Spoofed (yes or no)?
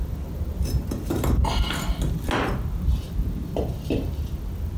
no